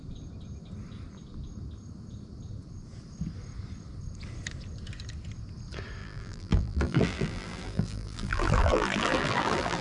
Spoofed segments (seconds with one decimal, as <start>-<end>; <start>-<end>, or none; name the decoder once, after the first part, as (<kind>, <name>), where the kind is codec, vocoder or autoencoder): 6.0-9.8 (vocoder, BigVGAN v2)